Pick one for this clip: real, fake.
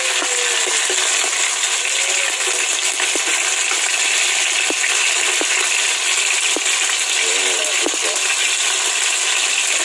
real